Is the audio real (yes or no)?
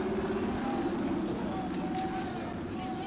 yes